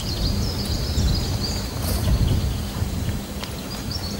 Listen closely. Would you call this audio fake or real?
real